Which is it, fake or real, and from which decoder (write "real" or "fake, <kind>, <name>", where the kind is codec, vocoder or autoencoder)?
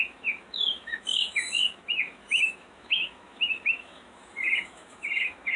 fake, autoencoder, DAC-VAE